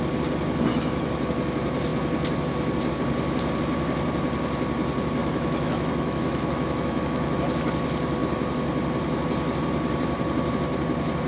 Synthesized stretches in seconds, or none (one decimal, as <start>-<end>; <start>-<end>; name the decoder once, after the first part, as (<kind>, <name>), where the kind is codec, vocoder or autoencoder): 0.7-1.3 (autoencoder, DAC-VAE); 5.2-7.4